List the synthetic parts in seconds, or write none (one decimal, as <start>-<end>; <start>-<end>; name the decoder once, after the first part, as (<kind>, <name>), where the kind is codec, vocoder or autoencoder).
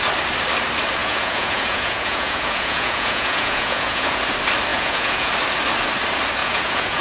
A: 1.0-4.2 (vocoder, Vocos); 4.7-5.3; 6.4-7.0